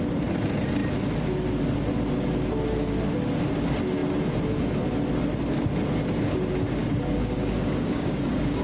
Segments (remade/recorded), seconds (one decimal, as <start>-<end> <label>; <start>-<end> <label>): 0.0-6.8 recorded; 6.8-8.6 remade